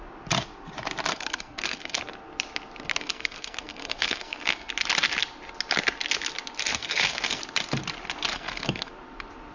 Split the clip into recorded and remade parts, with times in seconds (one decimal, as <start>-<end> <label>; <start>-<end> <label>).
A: 0.0-1.1 recorded; 1.1-2.0 remade; 2.0-2.9 recorded; 2.9-4.7 remade; 4.7-6.7 recorded; 6.7-7.4 remade; 7.4-8.3 recorded; 8.3-8.9 remade; 8.9-9.5 recorded